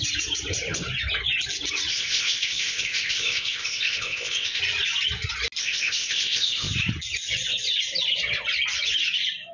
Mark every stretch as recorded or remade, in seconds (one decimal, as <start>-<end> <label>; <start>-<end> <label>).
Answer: 0.0-1.9 recorded; 1.9-4.6 remade; 4.6-5.6 recorded; 5.6-6.7 remade; 6.7-9.5 recorded